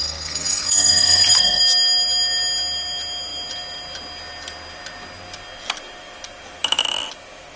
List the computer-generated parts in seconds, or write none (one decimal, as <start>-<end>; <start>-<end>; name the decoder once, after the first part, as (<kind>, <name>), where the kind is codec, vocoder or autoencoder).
0.0-1.6 (codec, SNAC)